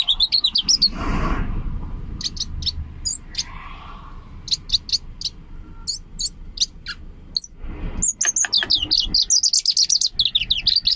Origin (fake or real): real